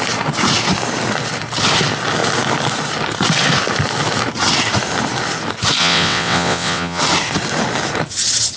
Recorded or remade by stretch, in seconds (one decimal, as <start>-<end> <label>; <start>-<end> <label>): 0.0-5.8 recorded; 5.8-7.0 remade; 7.0-8.6 recorded